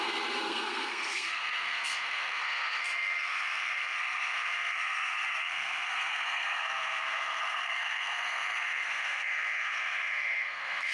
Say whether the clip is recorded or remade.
remade